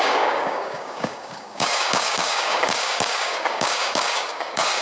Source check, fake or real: fake